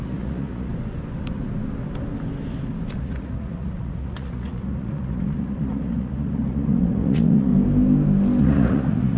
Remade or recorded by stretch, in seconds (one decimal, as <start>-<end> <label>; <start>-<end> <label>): 0.0-0.7 remade; 0.7-3.0 recorded; 3.0-7.5 remade; 7.5-8.4 recorded; 8.4-9.2 remade